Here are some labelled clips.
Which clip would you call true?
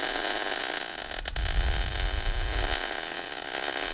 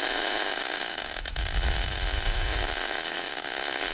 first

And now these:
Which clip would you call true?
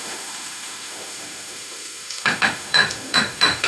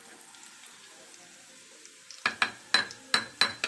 second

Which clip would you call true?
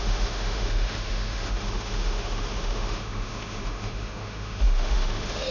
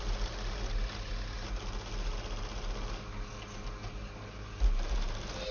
second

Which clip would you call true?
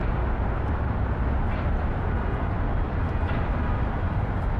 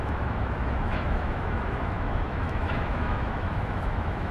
first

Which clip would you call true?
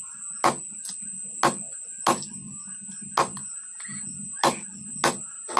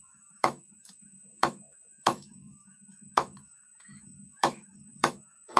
first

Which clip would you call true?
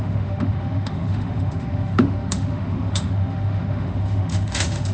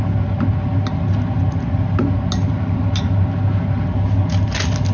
second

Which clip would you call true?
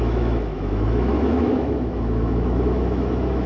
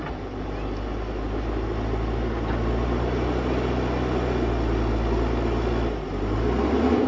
second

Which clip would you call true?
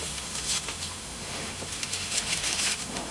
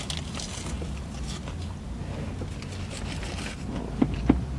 second